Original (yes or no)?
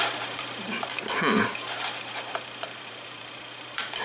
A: no